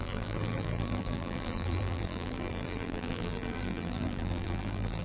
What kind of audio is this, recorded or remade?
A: remade